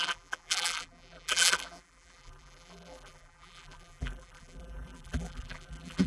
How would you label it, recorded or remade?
remade